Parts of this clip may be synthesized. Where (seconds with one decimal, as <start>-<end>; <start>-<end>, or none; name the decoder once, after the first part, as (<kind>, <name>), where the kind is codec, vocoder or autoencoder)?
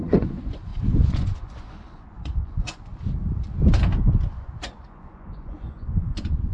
0.0-2.9 (vocoder, Vocos); 4.3-6.5